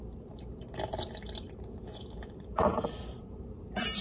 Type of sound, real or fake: fake